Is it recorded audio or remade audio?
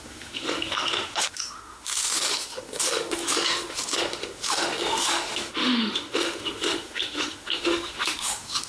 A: remade